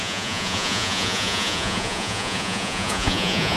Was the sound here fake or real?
fake